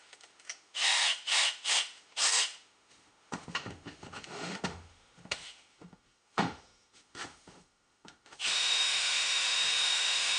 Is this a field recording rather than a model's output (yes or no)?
no